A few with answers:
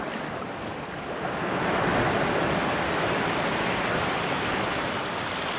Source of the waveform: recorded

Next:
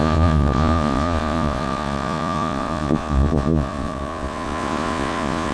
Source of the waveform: remade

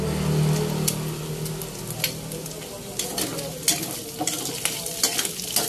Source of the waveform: recorded